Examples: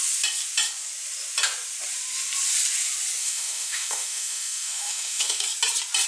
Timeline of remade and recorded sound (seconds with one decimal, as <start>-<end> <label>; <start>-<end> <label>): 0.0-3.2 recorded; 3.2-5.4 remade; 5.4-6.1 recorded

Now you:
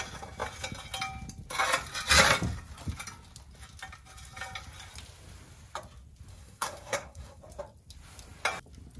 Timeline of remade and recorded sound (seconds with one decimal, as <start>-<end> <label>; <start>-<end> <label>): 0.0-6.3 recorded; 6.3-7.4 remade; 7.4-9.0 recorded

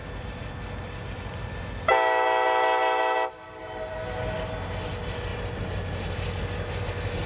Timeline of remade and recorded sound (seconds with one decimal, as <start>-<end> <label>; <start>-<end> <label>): 0.0-7.3 recorded

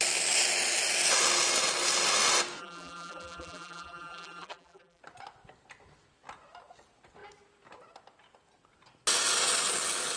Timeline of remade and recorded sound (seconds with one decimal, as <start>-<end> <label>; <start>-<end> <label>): 0.0-2.6 recorded; 2.6-5.0 remade; 5.0-10.2 recorded